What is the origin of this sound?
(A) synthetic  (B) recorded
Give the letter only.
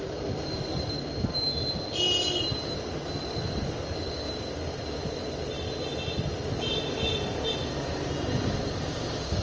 B